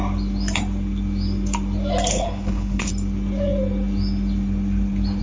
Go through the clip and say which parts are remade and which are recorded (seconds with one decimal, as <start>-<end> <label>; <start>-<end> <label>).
0.0-2.1 recorded; 2.1-2.9 remade; 2.9-5.2 recorded